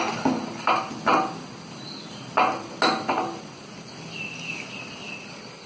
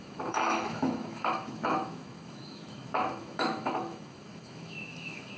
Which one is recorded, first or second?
first